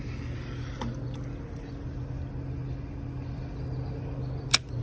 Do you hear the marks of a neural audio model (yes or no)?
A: no